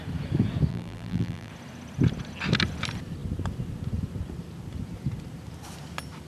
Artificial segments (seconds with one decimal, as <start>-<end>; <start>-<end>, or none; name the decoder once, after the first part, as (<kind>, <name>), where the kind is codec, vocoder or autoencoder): 0.7-1.5 (vocoder, BigVGAN v2)